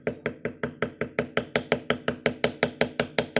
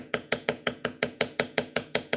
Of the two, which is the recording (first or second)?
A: first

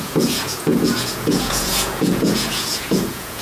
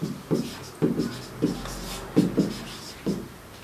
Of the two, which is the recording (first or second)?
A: second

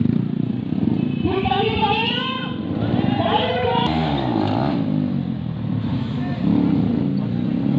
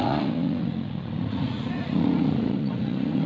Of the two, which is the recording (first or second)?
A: first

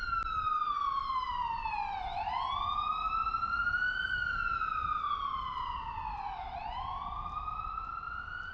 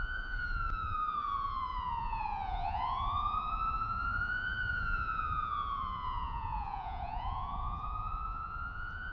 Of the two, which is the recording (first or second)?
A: first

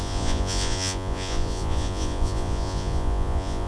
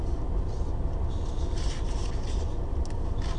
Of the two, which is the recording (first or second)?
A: second